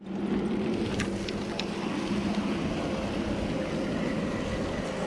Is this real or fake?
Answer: real